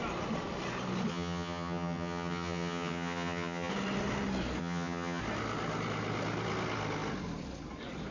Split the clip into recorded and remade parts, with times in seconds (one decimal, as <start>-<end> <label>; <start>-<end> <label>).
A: 0.0-1.1 recorded; 1.1-3.7 remade; 3.7-4.6 recorded; 4.6-5.2 remade; 5.2-8.1 recorded